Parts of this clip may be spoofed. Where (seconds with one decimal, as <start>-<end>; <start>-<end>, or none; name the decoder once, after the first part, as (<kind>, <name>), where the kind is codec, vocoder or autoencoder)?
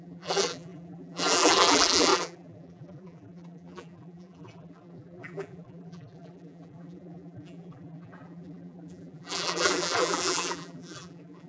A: 0.0-11.5 (vocoder, BigVGAN v2)